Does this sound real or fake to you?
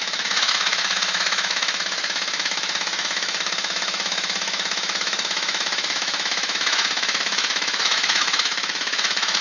fake